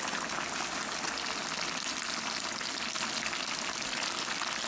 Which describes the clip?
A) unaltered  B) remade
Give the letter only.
A